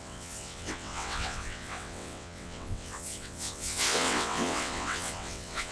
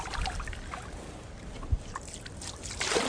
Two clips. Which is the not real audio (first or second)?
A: first